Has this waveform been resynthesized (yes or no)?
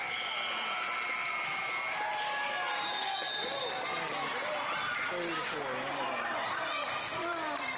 no